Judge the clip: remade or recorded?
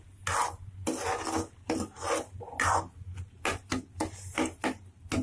recorded